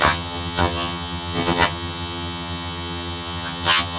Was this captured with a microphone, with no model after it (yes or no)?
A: no